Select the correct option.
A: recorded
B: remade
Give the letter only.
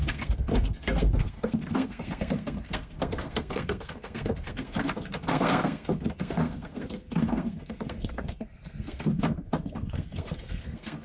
B